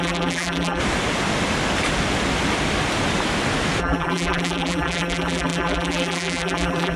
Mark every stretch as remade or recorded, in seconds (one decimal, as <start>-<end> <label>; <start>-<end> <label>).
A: 0.0-0.8 remade; 0.8-3.8 recorded; 3.8-7.0 remade